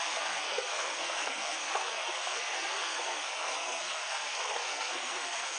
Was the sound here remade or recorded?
remade